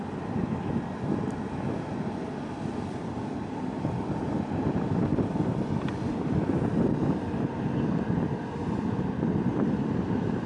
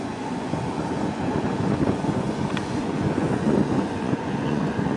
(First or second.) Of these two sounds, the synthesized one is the second